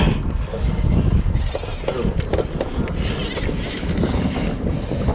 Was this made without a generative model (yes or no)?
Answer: yes